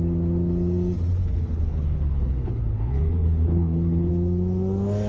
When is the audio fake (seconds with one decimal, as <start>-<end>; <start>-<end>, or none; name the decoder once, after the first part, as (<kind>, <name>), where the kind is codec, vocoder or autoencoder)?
1.2-4.1 (codec, HILCodec)